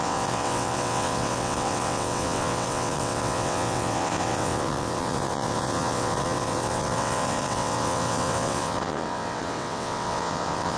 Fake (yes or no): yes